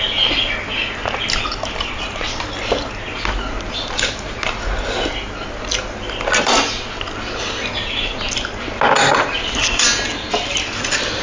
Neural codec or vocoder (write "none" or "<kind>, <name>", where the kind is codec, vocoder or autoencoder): none